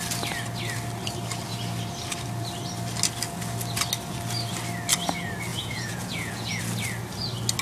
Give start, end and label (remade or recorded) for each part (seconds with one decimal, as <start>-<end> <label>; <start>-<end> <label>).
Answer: 0.0-5.5 recorded; 5.5-6.6 remade; 6.6-7.6 recorded